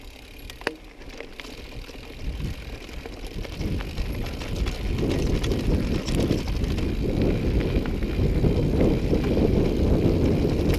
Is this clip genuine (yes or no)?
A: yes